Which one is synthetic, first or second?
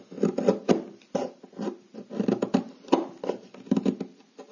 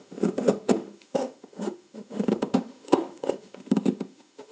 second